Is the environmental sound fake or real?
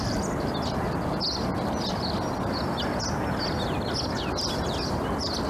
real